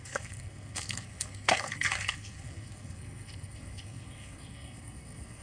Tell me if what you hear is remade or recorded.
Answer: remade